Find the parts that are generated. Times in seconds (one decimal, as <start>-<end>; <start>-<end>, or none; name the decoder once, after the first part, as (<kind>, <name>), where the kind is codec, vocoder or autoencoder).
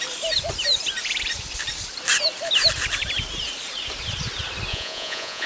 4.7-5.5 (vocoder, Vocos)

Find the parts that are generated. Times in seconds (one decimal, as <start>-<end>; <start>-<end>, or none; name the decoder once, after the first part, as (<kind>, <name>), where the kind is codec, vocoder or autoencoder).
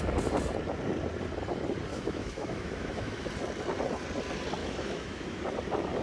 1.9-3.3 (autoencoder, DAC-VAE); 4.6-5.4